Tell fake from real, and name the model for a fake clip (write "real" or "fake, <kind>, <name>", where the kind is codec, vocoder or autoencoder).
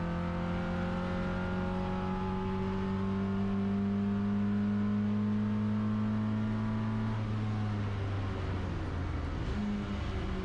real